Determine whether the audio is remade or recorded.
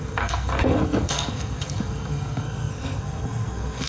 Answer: remade